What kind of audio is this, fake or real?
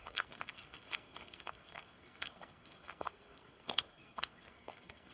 fake